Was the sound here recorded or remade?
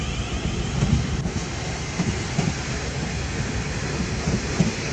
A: recorded